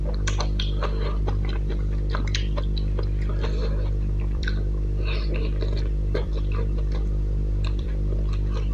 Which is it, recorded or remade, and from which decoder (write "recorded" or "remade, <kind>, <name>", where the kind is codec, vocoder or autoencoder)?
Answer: remade, vocoder, BigVGAN v2